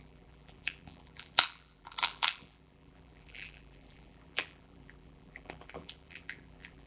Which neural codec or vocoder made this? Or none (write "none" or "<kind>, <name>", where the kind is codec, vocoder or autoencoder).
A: vocoder, BigVGAN v2